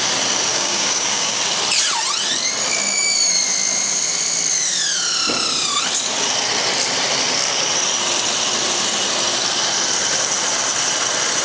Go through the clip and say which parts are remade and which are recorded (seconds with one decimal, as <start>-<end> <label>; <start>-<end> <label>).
0.0-0.5 recorded; 0.5-1.4 remade; 1.4-11.4 recorded